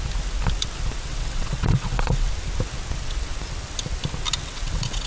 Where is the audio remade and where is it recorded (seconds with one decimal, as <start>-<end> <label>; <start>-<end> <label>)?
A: 0.0-1.1 recorded; 1.1-2.3 remade; 2.3-4.4 recorded; 4.4-5.1 remade